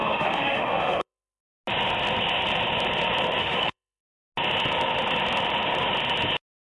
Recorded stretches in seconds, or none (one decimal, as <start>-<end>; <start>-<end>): 1.4-3.4; 4.0-6.8